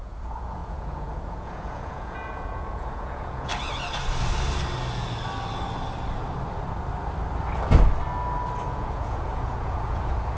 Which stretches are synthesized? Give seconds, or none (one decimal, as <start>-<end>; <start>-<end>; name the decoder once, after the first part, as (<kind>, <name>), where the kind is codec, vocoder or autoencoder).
0.0-3.5 (vocoder, Vocos); 8.7-10.4